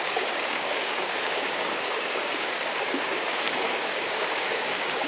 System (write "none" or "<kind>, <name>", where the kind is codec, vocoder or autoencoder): codec, DAC